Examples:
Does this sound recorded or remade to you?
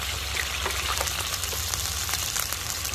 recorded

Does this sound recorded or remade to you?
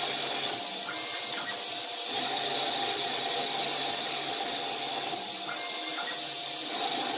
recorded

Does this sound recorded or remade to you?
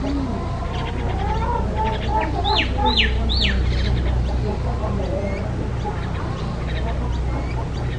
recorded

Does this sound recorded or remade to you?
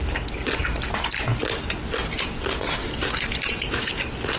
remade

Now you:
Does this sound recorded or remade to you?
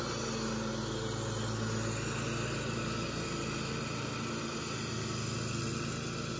recorded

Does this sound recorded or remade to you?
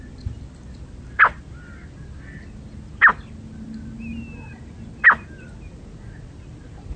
recorded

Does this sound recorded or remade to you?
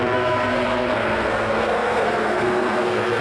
remade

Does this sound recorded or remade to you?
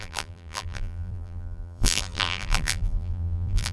remade